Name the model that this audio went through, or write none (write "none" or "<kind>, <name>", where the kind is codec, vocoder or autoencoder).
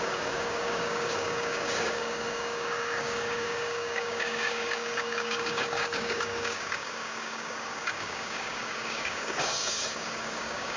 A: codec, DAC